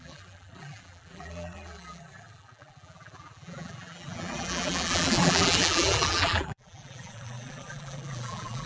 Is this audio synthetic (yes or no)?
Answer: yes